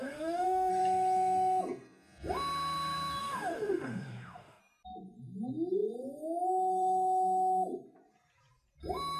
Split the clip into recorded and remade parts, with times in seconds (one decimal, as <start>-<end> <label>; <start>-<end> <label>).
0.0-0.7 remade; 0.7-3.2 recorded; 3.2-4.6 remade; 4.6-9.2 recorded